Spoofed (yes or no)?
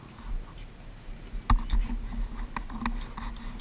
no